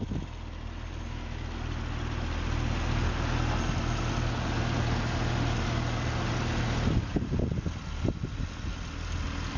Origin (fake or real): real